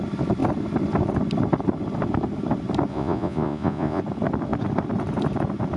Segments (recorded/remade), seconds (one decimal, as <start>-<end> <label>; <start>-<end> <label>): 0.0-2.9 recorded; 2.9-4.0 remade; 4.0-5.8 recorded